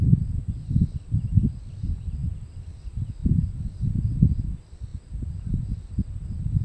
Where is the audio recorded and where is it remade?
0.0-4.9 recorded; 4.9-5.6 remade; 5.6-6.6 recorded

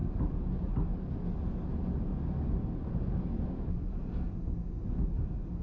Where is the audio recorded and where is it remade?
0.0-5.6 recorded

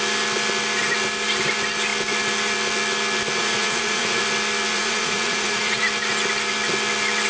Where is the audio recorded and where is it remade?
0.0-3.4 recorded; 3.4-4.2 remade; 4.2-4.7 recorded; 4.7-5.8 remade; 5.8-7.3 recorded

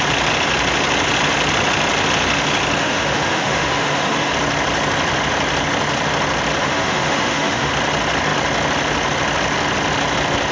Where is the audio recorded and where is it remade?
0.0-2.8 recorded; 2.8-4.3 remade; 4.3-6.6 recorded; 6.6-7.7 remade; 7.7-10.5 recorded

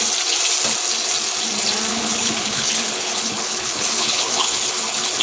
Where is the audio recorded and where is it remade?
0.0-1.9 recorded; 1.9-5.2 remade